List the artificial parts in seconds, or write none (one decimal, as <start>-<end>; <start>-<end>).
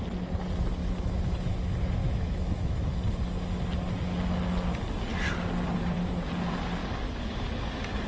0.8-1.5; 2.0-2.9